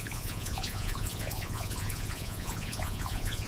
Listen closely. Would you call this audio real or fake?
fake